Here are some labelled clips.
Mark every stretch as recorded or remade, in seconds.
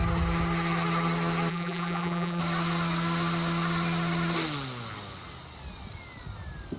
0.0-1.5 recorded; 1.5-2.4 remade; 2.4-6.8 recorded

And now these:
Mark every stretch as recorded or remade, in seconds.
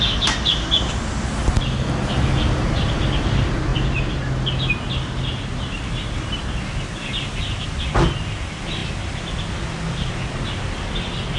0.0-11.4 recorded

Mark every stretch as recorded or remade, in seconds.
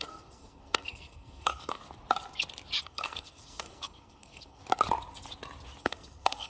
0.0-1.8 remade; 1.8-2.8 recorded; 2.8-4.6 remade; 4.6-5.8 recorded; 5.8-6.5 remade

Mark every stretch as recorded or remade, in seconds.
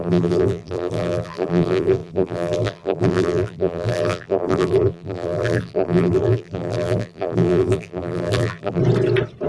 0.0-8.8 remade; 8.8-9.5 recorded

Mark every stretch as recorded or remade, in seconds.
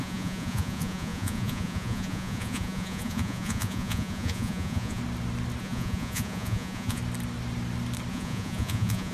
0.0-5.0 remade; 5.0-5.6 recorded; 5.6-7.0 remade; 7.0-8.1 recorded; 8.1-9.1 remade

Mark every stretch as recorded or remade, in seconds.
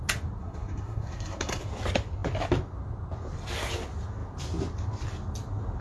0.0-0.4 recorded; 0.4-1.6 remade; 1.6-5.8 recorded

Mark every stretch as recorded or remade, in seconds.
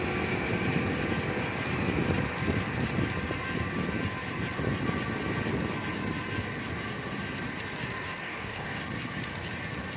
0.0-8.2 recorded; 8.2-8.8 remade; 8.8-10.0 recorded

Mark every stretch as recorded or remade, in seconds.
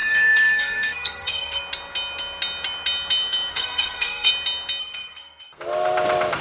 0.0-1.6 remade; 1.6-3.5 recorded; 3.5-4.3 remade; 4.3-4.8 recorded; 4.8-5.6 remade; 5.6-6.4 recorded